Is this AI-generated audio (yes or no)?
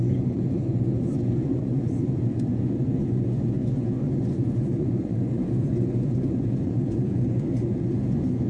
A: yes